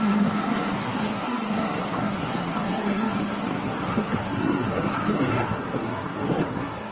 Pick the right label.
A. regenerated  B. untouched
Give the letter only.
A